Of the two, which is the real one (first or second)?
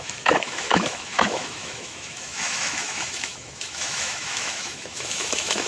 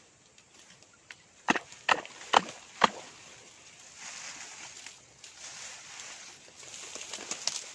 second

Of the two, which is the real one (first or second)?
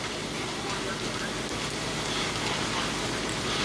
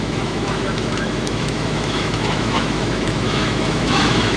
first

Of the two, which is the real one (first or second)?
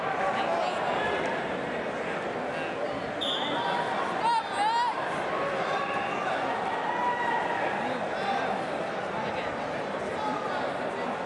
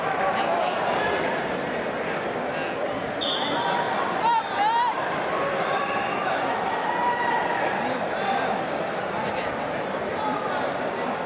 first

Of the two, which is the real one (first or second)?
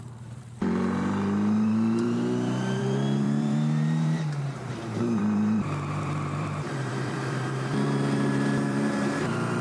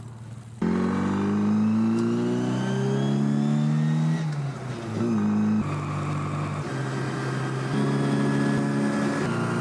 second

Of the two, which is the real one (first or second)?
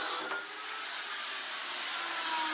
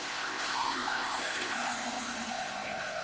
first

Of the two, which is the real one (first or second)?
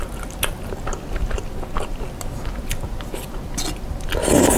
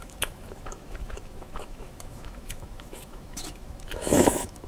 first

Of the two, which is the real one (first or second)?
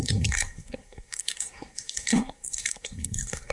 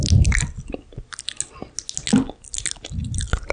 second